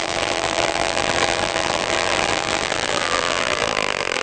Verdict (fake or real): fake